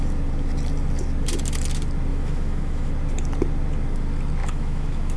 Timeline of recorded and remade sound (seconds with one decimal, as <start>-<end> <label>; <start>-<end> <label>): 0.0-2.1 recorded; 2.1-2.9 remade; 2.9-4.4 recorded; 4.4-5.2 remade